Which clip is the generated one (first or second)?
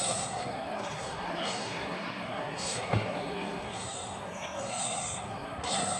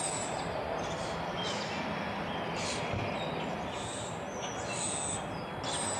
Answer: first